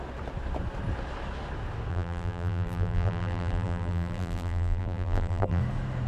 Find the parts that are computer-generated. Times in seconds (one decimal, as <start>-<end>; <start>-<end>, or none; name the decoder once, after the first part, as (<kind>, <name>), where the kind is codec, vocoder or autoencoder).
1.9-5.6 (vocoder, BigVGAN v2)